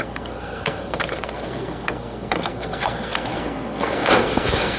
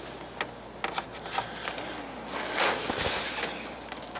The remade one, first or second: first